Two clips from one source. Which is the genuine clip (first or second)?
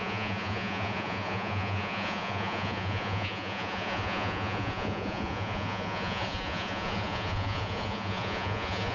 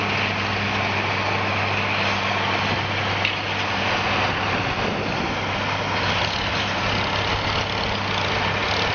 second